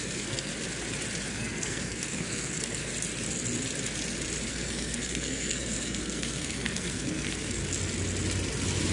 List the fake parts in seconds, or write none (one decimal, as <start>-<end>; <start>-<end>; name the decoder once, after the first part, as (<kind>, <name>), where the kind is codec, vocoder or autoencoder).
0.0-0.5 (codec, SNAC); 1.3-2.9; 4.5-7.6